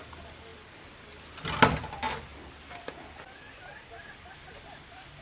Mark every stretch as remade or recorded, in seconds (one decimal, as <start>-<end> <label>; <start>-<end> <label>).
0.0-5.2 recorded